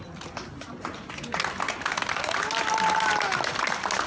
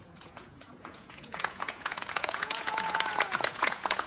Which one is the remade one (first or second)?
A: second